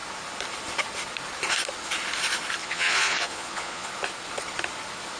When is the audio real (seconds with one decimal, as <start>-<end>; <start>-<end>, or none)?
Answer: 0.0-2.6; 3.9-5.2